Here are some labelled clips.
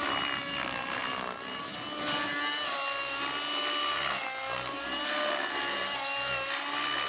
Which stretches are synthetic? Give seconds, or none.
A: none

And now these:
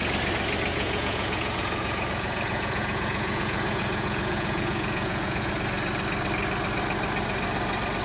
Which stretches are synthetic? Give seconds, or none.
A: 0.7-5.5 (vocoder, Vocos)

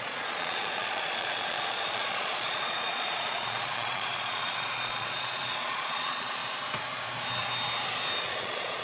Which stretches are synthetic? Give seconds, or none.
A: 0.0-6.4 (vocoder, Vocos); 8.2-8.8

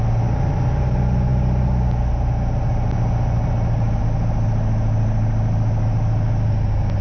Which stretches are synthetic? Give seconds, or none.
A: none

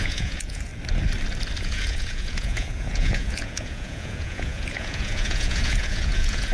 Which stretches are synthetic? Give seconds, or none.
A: 0.0-0.7 (vocoder, Vocos); 1.6-6.5

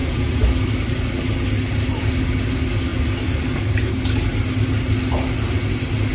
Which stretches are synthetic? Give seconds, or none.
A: none

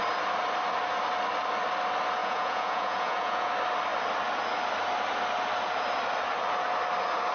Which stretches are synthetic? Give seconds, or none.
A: 2.2-3.5 (vocoder, Vocos)

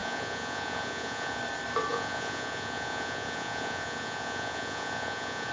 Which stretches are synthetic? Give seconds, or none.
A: 0.0-1.4 (vocoder, Vocos); 1.9-5.5